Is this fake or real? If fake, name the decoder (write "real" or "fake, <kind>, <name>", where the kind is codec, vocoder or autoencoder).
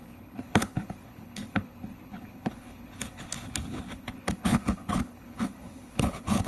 fake, codec, HILCodec